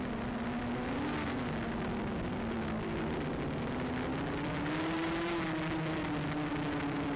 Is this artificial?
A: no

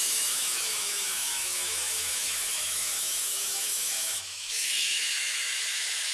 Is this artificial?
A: yes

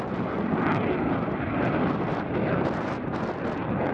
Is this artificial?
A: no